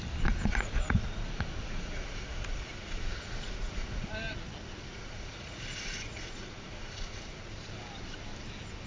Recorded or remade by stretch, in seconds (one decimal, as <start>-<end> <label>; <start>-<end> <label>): 0.0-0.5 recorded; 0.5-4.1 remade; 4.1-4.9 recorded; 4.9-7.5 remade; 7.5-8.9 recorded